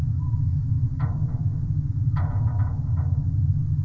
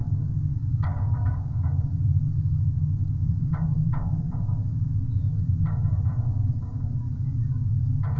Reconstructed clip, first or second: second